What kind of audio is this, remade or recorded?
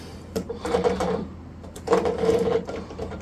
recorded